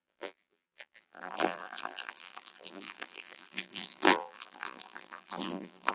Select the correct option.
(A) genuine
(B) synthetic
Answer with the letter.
B